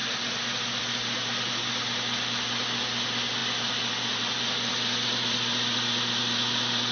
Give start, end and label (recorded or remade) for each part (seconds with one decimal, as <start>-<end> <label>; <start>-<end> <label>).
0.0-6.9 recorded